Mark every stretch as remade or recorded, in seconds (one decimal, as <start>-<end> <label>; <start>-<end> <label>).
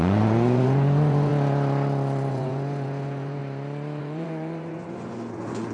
0.0-1.3 remade; 1.3-2.3 recorded; 2.3-3.4 remade; 3.4-4.0 recorded; 4.0-5.7 remade